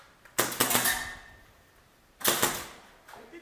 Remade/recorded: recorded